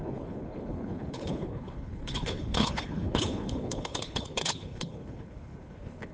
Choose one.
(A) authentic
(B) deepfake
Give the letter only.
B